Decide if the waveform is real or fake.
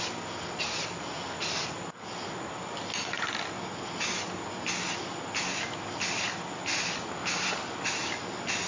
real